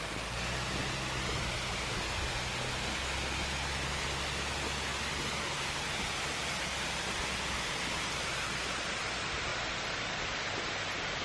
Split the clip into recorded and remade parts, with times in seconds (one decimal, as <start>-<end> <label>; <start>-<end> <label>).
0.0-11.2 recorded